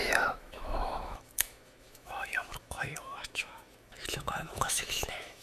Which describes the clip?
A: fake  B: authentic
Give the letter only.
A